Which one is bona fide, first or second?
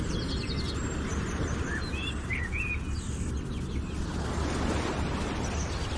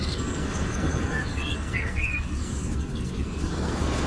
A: first